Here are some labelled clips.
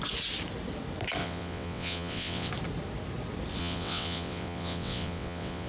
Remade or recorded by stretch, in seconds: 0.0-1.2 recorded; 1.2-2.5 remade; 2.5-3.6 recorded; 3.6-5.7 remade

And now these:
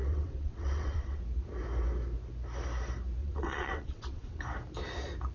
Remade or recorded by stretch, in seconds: 0.0-1.2 remade; 1.2-3.2 recorded; 3.2-4.4 remade; 4.4-5.3 recorded

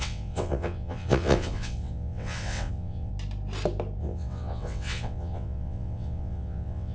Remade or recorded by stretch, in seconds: 0.0-3.1 remade; 3.1-4.0 recorded; 4.0-6.9 remade

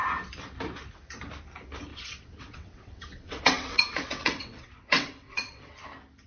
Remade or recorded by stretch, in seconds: 0.0-1.9 recorded; 1.9-5.7 remade; 5.7-6.3 recorded

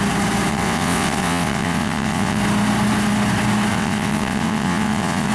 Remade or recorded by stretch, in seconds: 0.0-0.5 recorded; 0.5-2.4 remade; 2.4-3.7 recorded; 3.7-5.3 remade